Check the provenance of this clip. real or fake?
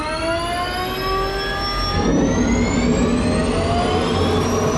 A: real